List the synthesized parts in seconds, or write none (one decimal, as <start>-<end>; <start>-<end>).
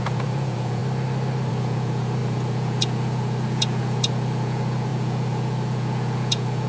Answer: 0.0-0.8; 1.5-6.7